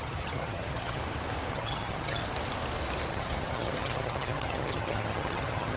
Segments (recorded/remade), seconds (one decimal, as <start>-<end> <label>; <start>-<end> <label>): 0.0-1.0 remade; 1.0-1.5 recorded; 1.5-2.2 remade; 2.2-3.1 recorded; 3.1-5.8 remade